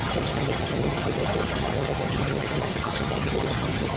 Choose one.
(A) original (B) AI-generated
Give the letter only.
B